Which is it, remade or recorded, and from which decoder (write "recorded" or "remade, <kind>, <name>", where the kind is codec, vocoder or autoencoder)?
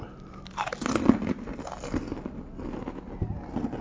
recorded